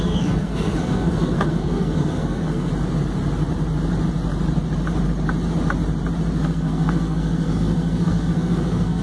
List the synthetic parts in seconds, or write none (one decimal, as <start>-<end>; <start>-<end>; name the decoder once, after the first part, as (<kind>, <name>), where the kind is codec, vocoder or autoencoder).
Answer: 0.0-2.7 (codec, SNAC); 6.4-9.0